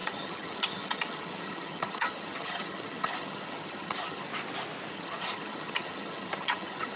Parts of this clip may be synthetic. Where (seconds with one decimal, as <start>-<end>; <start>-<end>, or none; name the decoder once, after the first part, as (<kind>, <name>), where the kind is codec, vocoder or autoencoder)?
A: 0.0-4.3 (vocoder, HiFi-GAN); 4.9-7.0